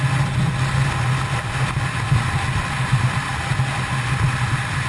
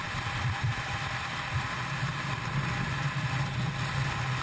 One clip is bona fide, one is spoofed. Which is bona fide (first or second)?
first